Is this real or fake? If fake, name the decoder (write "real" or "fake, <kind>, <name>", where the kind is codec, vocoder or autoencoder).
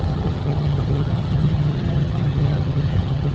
fake, vocoder, HiFi-GAN